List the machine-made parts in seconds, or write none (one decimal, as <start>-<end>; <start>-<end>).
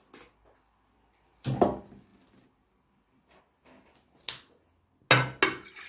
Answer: none